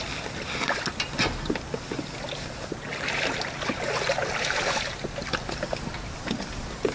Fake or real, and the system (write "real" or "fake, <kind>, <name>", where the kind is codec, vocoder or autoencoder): real